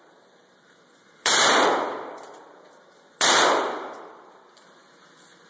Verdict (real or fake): fake